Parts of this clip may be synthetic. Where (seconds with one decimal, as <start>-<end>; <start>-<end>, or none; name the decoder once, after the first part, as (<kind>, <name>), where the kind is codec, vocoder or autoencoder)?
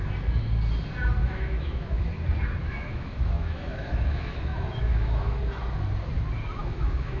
1.2-2.1 (autoencoder, DAC-VAE); 2.6-5.4; 6.6-7.2